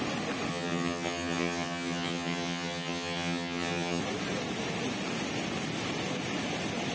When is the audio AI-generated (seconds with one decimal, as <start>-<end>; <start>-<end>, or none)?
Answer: 0.5-4.0